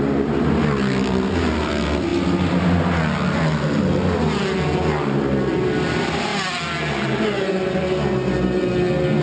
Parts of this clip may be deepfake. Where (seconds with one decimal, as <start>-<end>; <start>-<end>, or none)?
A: none